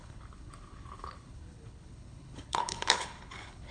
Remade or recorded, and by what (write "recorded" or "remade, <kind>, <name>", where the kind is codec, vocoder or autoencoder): remade, codec, HILCodec